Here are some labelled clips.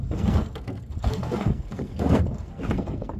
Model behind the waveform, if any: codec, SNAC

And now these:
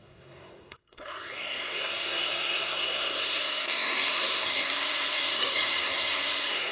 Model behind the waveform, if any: codec, SNAC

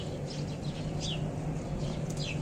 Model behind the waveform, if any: none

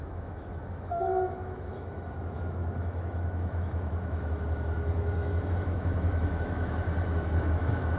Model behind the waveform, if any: autoencoder, DAC-VAE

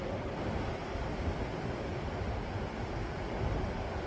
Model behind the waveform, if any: none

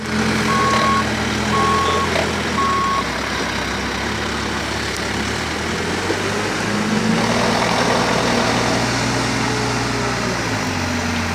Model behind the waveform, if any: none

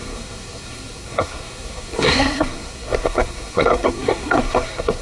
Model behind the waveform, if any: codec, SNAC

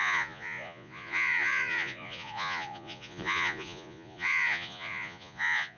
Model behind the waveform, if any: vocoder, Vocos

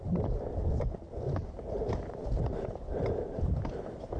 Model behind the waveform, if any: vocoder, BigVGAN v2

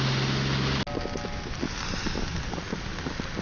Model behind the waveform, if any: none